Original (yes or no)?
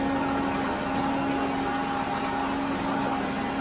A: yes